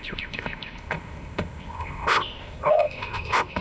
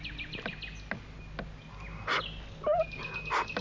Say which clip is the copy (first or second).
first